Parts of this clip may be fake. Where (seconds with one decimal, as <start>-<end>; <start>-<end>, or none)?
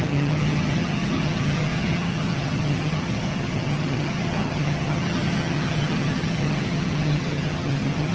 0.0-8.1